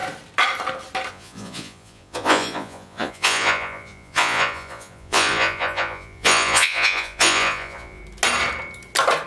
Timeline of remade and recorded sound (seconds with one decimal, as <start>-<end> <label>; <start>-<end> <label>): 0.0-1.1 recorded; 1.1-8.0 remade; 8.0-9.3 recorded